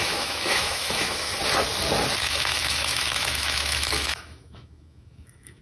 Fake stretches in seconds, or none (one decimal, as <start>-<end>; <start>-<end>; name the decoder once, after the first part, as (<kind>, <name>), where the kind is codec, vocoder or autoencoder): 0.0-1.3 (autoencoder, DAC-VAE); 2.2-5.6